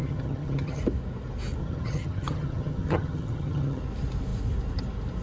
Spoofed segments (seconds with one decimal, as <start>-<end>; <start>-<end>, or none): 0.0-0.8; 1.6-3.8